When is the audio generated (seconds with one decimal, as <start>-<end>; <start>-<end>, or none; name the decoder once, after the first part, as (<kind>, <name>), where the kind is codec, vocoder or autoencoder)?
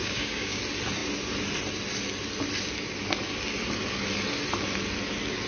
0.0-0.6 (codec, DAC)